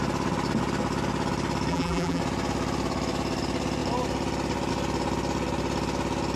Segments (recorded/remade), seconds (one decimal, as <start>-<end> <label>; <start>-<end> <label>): 0.0-1.7 recorded; 1.7-2.2 remade; 2.2-6.4 recorded